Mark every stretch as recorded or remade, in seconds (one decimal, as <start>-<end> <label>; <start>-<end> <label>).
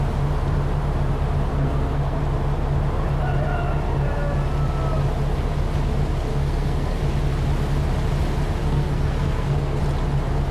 0.0-1.5 recorded; 1.5-2.2 remade; 2.2-6.3 recorded; 6.3-7.0 remade; 7.0-8.6 recorded; 8.6-9.8 remade; 9.8-10.5 recorded